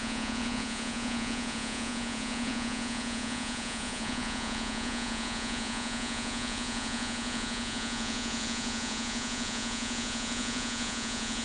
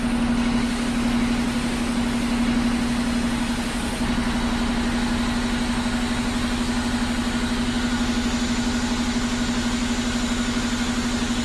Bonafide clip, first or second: second